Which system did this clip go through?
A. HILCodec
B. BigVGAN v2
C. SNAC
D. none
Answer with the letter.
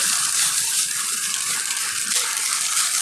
D